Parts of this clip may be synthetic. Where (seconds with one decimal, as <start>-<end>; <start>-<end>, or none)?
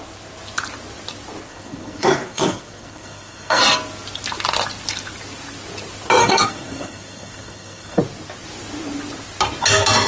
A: 1.5-3.6; 6.2-8.0